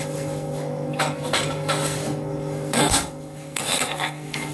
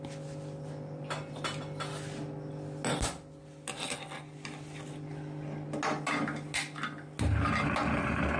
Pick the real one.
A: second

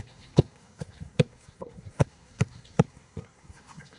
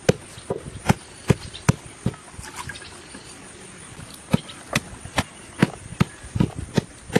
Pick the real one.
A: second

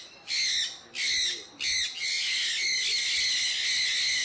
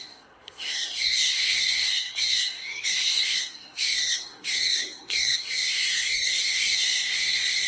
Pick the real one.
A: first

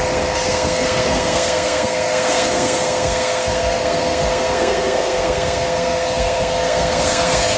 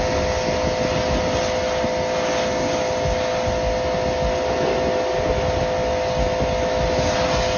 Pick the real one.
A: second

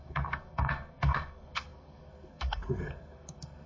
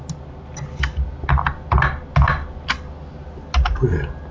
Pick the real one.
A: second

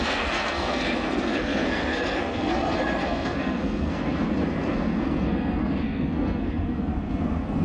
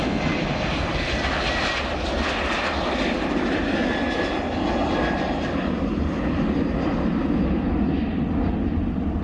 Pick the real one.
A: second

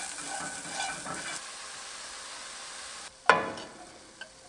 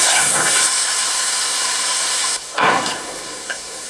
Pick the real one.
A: first